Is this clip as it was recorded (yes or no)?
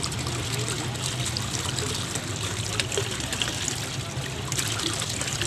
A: yes